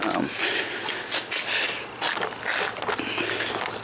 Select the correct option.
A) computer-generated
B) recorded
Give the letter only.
B